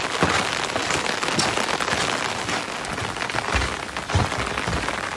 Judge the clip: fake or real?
real